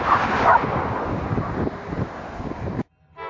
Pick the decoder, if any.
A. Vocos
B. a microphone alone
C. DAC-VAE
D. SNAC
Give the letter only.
B